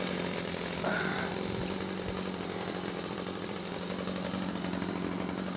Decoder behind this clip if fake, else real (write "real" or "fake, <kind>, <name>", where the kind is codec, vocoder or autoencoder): real